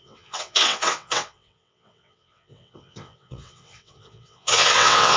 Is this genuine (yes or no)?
no